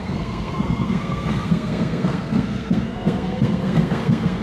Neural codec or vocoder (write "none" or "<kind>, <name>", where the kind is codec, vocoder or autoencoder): codec, SNAC